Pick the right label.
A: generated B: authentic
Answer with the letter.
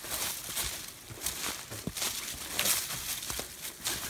B